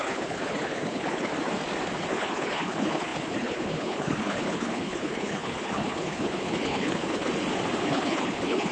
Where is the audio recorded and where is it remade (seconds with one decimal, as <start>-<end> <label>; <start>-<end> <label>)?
0.0-1.3 remade; 1.3-2.1 recorded; 2.1-7.3 remade; 7.3-7.8 recorded; 7.8-8.7 remade